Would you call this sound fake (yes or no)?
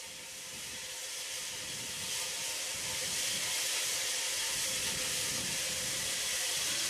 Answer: no